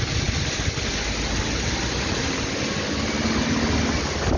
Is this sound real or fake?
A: real